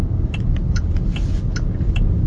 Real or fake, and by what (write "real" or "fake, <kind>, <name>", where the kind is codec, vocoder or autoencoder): real